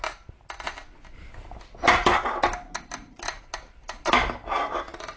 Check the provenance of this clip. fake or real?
real